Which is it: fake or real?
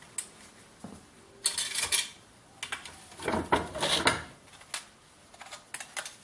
real